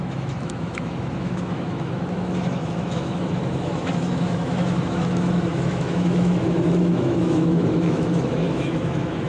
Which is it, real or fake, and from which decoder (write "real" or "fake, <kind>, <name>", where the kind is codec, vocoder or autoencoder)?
fake, autoencoder, DAC-VAE